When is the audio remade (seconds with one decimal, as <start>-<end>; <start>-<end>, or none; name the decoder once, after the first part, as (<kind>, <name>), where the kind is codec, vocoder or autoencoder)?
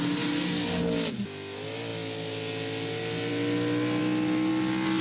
none